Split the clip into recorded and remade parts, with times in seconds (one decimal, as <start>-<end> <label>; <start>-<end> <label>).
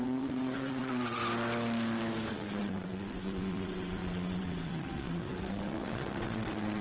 0.0-1.2 remade; 1.2-2.3 recorded; 2.3-6.8 remade